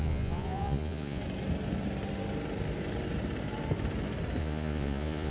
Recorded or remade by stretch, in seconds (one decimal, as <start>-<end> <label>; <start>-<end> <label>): 0.0-1.2 remade; 1.2-4.4 recorded; 4.4-5.3 remade